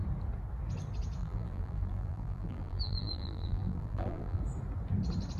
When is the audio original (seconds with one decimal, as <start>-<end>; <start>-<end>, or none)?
0.0-1.2; 4.4-5.4